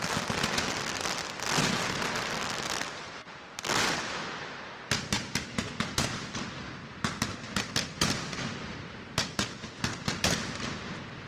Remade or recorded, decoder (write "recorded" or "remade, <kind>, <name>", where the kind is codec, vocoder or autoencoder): recorded